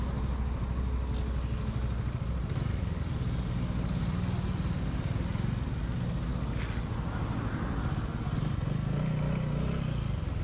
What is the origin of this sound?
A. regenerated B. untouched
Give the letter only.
B